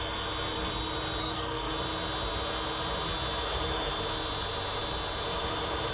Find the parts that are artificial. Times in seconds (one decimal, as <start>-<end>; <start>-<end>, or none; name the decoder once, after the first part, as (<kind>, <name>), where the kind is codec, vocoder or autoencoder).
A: 1.2-1.7 (codec, SNAC)